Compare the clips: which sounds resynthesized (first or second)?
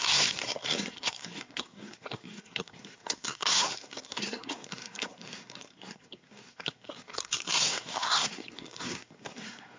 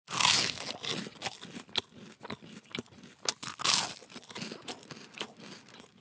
first